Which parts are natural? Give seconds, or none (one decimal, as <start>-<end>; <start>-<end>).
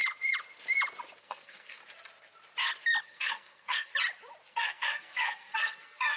0.0-1.2; 1.8-3.0; 3.9-4.5